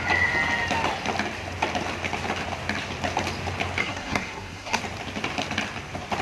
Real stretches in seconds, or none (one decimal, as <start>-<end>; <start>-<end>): 0.0-3.8; 4.8-6.2